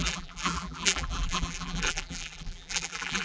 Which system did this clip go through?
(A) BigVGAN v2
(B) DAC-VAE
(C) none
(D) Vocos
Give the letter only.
A